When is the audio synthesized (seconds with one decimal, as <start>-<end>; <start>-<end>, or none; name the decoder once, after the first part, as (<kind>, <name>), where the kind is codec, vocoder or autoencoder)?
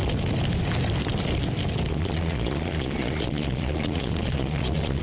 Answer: 1.9-5.0 (vocoder, Vocos)